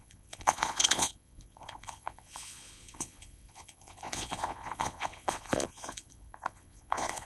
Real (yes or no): no